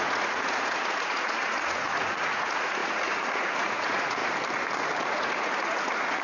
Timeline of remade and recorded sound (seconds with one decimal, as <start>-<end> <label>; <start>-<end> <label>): 0.0-4.2 remade; 4.2-5.0 recorded; 5.0-6.2 remade